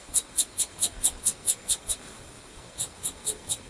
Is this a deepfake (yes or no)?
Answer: yes